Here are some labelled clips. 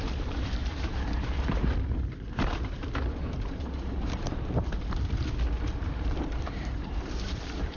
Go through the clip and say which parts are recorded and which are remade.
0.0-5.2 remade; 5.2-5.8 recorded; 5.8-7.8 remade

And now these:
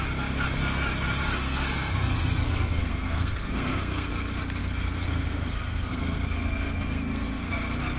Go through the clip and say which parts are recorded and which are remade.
0.0-1.3 recorded; 1.3-4.1 remade; 4.1-4.6 recorded; 4.6-7.5 remade; 7.5-8.0 recorded